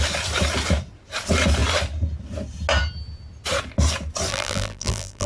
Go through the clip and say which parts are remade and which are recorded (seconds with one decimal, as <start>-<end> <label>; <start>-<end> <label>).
0.0-4.3 recorded; 4.3-5.3 remade